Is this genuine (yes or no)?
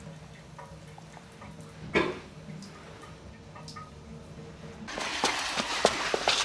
yes